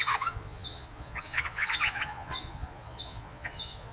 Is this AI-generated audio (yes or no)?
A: yes